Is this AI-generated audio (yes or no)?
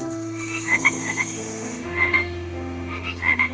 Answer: yes